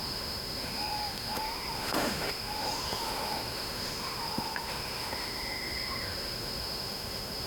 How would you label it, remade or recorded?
remade